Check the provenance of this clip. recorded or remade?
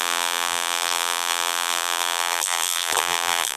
remade